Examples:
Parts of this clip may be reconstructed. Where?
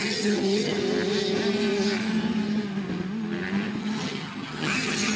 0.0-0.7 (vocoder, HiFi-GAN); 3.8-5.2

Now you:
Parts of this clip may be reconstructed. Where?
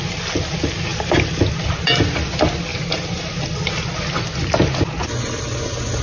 none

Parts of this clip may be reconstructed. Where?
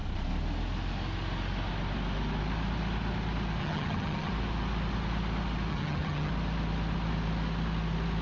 3.6-4.3 (vocoder, HiFi-GAN); 5.7-6.3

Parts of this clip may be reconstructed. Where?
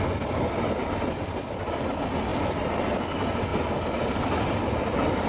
none